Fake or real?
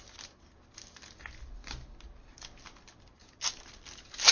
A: real